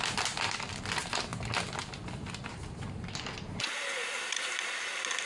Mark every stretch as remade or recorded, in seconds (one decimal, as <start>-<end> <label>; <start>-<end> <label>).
0.0-5.3 recorded